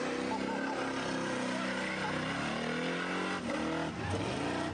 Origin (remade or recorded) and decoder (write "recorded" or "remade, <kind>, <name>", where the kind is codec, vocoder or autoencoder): recorded